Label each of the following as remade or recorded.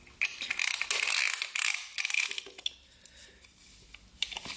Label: recorded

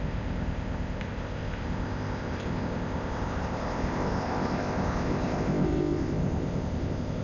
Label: remade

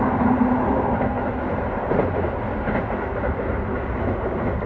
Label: recorded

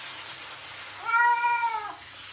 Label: recorded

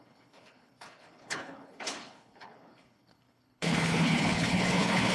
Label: remade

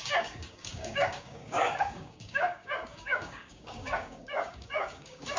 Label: remade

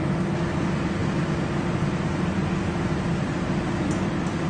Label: recorded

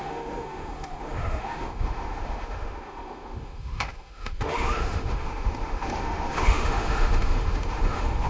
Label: remade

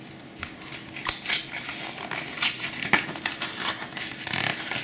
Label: recorded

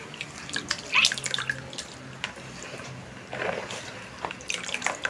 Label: recorded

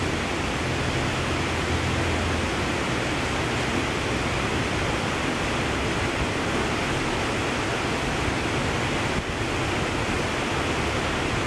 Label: recorded